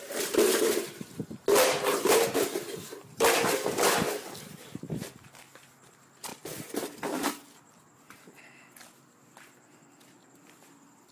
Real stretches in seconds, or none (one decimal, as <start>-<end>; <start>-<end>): 0.0-11.1